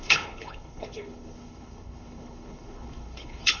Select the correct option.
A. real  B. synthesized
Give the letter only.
B